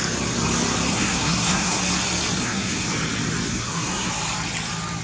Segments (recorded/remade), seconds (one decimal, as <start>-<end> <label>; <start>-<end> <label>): 0.0-0.9 recorded; 0.9-1.8 remade; 1.8-2.4 recorded; 2.4-2.9 remade; 2.9-3.5 recorded; 3.5-4.1 remade; 4.1-5.0 recorded